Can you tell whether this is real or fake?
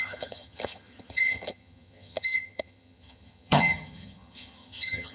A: fake